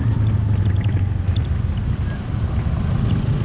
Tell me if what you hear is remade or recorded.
recorded